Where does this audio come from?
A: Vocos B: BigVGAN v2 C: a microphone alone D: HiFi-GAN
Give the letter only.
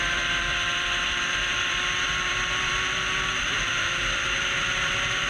B